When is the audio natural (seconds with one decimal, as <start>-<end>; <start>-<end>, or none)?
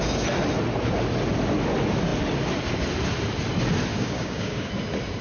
0.0-3.9; 4.7-5.2